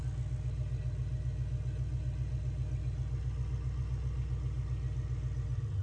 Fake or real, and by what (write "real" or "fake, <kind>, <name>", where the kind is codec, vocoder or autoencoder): real